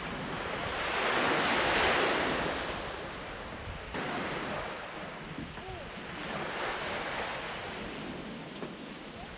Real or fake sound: real